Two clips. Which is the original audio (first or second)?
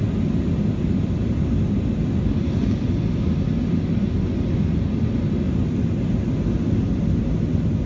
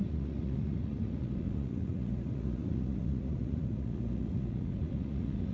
first